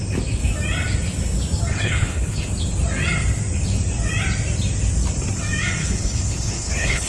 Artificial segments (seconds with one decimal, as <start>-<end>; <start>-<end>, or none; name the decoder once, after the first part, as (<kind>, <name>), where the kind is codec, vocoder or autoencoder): 1.7-2.5 (codec, HILCodec); 5.8-7.1